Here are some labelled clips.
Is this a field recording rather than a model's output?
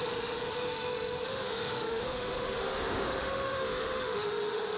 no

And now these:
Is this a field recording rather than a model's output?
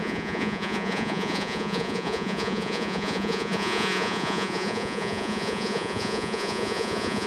no